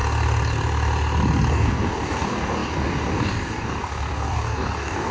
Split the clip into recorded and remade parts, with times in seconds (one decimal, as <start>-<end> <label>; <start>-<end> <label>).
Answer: 0.0-1.5 recorded; 1.5-5.1 remade